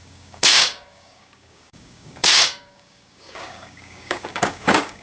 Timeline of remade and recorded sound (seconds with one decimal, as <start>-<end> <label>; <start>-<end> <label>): 0.0-5.0 remade